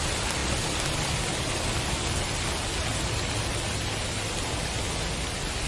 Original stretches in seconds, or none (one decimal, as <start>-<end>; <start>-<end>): 0.0-5.7